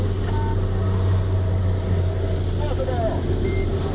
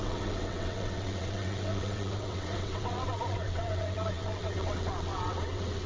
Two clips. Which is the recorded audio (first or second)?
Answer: first